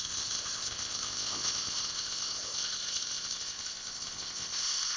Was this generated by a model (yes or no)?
yes